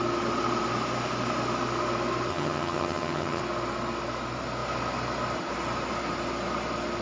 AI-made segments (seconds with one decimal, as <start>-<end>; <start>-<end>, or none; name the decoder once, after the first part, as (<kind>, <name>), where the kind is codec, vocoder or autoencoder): 2.3-3.4 (vocoder, HiFi-GAN)